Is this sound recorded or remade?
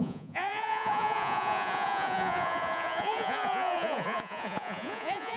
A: remade